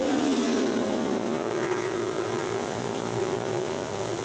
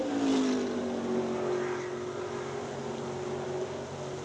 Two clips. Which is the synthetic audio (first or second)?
first